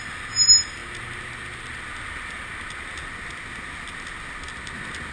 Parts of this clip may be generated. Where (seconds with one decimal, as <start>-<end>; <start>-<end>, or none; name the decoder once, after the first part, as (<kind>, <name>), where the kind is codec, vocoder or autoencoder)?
none